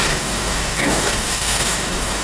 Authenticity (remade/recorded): remade